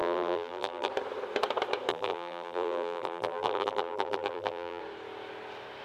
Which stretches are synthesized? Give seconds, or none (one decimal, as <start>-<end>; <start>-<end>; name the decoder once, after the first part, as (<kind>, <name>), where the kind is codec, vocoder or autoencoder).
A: 0.0-0.9 (vocoder, BigVGAN v2); 1.9-4.8